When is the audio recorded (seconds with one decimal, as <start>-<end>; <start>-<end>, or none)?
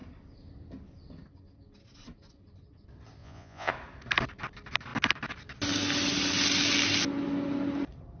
0.0-3.2; 3.7-8.2